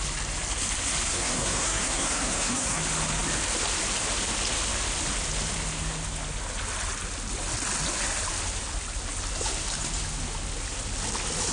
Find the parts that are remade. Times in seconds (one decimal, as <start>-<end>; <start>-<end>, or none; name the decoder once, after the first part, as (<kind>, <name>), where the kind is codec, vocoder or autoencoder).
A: 1.1-2.8 (codec, SNAC)